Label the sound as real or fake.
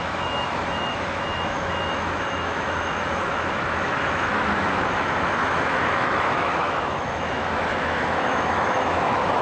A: fake